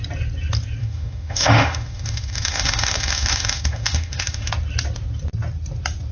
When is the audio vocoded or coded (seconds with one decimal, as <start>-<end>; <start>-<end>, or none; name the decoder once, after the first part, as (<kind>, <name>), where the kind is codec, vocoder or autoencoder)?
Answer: 0.8-4.5 (autoencoder, DAC-VAE)

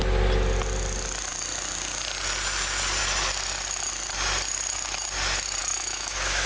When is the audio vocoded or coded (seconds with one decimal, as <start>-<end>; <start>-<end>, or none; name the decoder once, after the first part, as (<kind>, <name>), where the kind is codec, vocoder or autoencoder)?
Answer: 5.6-6.5 (autoencoder, DAC-VAE)